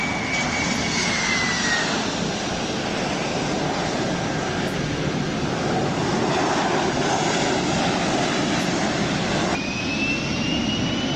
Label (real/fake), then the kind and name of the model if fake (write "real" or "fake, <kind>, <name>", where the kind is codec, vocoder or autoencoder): real